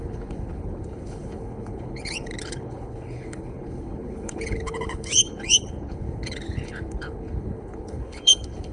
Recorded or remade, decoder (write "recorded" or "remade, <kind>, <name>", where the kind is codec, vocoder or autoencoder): remade, codec, HILCodec